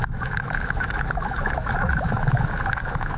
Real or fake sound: fake